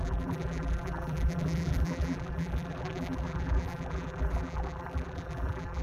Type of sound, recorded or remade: remade